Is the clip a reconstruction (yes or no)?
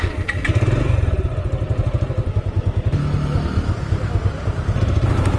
no